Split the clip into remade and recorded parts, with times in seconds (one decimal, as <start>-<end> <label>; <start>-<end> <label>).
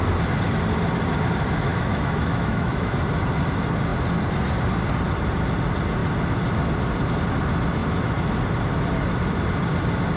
0.0-1.7 recorded; 1.7-2.9 remade; 2.9-10.2 recorded